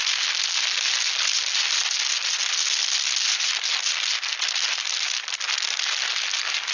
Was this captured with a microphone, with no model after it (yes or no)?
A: yes